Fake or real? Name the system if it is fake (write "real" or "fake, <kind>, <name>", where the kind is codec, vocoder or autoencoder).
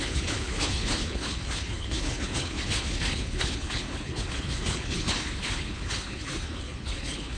fake, codec, HILCodec